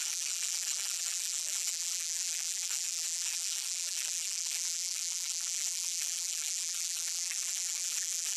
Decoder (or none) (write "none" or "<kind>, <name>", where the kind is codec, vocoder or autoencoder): vocoder, BigVGAN v2